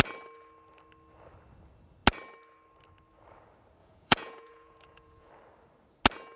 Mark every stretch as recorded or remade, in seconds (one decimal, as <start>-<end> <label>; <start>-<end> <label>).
0.0-3.8 recorded; 3.8-5.3 remade; 5.3-6.4 recorded